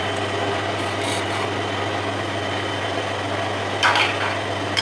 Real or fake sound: real